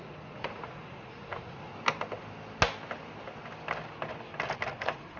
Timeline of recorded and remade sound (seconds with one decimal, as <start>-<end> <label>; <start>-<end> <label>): 0.0-1.7 remade; 1.7-4.8 recorded; 4.8-5.2 remade